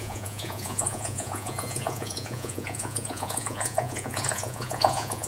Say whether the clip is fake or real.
fake